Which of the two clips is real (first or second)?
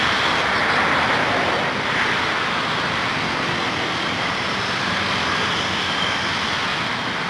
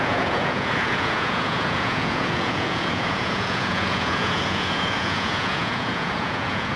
first